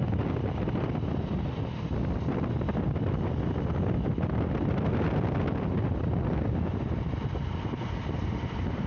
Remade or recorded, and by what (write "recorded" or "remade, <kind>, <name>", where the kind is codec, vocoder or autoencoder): recorded